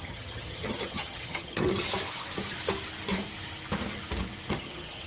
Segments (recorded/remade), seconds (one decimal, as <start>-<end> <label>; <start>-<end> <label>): 0.0-1.9 remade; 1.9-4.5 recorded; 4.5-5.1 remade